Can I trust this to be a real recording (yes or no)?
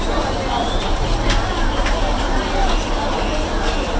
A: yes